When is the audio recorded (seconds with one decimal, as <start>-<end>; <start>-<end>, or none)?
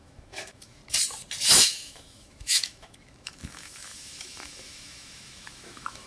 0.8-1.6